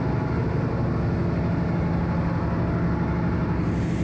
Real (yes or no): yes